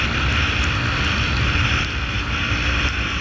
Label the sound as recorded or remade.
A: recorded